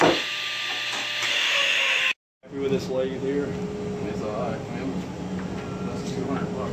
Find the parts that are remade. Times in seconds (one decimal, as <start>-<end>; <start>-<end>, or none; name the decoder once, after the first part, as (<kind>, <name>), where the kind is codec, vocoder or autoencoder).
1.3-2.0 (autoencoder, DAC-VAE)